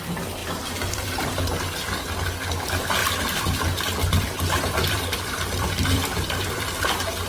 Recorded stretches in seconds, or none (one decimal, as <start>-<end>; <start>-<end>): 0.0-0.4; 1.4-3.0; 6.8-7.3